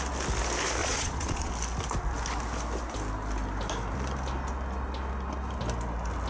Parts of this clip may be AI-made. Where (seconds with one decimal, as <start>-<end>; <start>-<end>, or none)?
0.8-1.5